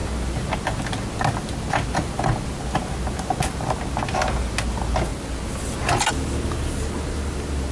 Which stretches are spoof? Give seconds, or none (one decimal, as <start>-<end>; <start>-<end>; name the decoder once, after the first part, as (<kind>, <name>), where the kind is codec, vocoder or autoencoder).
none